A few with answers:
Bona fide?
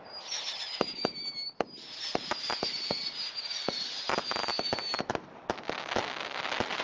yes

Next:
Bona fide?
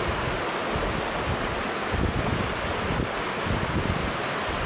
yes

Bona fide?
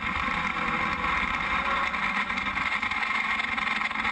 yes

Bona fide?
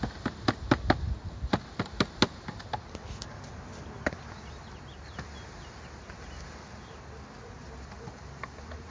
yes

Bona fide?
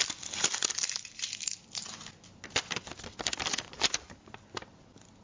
yes